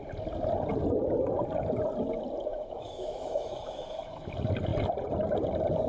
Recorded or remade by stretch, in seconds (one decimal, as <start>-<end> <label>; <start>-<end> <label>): 0.0-2.5 recorded; 2.5-4.3 remade; 4.3-5.9 recorded